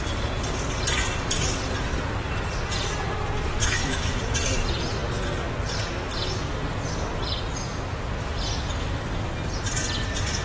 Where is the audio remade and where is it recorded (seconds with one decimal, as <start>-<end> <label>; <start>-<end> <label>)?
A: 0.0-3.6 recorded; 3.6-4.2 remade; 4.2-10.4 recorded